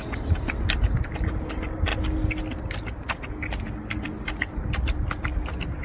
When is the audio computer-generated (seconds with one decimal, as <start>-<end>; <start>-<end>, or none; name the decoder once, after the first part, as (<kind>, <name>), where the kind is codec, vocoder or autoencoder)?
none